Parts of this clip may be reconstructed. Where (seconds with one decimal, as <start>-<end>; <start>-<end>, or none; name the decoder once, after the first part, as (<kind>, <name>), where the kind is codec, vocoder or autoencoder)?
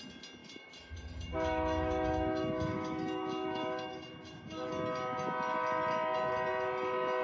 0.4-4.7 (autoencoder, DAC-VAE)